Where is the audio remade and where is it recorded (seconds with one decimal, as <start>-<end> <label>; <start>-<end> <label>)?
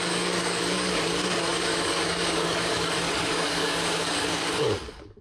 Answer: 0.0-5.2 remade